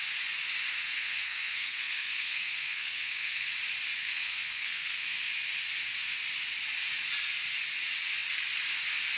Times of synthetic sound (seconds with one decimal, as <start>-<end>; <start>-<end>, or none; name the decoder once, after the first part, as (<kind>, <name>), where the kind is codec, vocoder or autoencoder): 0.8-3.5 (codec, SNAC); 4.0-5.3

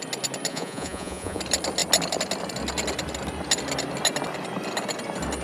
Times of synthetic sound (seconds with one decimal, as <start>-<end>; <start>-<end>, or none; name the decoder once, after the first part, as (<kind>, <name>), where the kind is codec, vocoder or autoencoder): 0.5-1.4 (vocoder, Vocos)